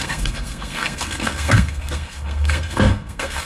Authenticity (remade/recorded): remade